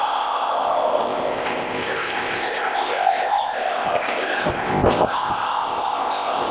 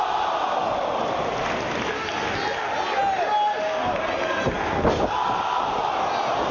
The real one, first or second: second